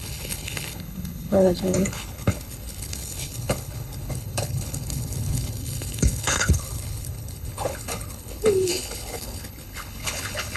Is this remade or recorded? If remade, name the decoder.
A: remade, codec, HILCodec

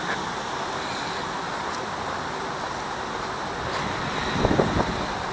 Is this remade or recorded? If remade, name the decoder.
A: recorded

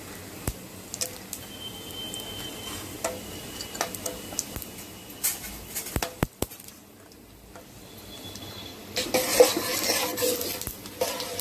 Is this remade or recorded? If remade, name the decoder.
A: recorded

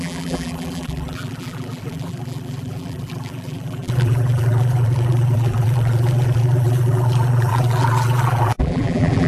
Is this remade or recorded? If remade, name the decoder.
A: remade, vocoder, BigVGAN v2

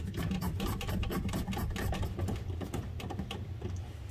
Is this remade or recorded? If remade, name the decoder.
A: recorded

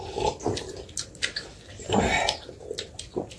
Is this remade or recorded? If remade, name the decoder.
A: recorded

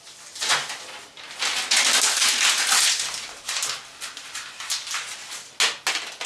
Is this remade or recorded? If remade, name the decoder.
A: recorded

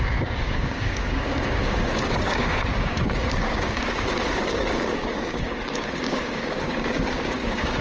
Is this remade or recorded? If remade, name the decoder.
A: remade, codec, DAC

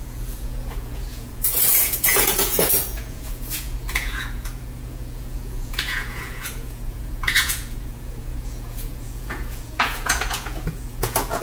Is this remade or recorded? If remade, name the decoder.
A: remade, vocoder, Vocos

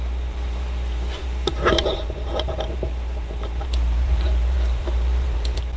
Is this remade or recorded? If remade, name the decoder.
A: remade, vocoder, BigVGAN v2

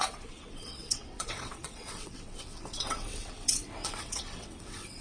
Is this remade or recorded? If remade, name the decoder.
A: remade, vocoder, WaveNeXt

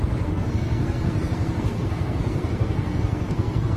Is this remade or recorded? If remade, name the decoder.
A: remade, codec, SNAC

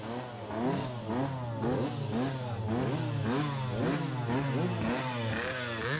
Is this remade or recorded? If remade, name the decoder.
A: recorded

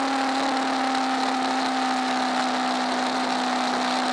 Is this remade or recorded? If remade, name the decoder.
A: recorded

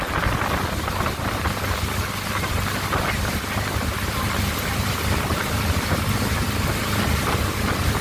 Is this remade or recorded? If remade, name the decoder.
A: recorded